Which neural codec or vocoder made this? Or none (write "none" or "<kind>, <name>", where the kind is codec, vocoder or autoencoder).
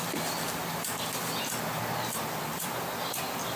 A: none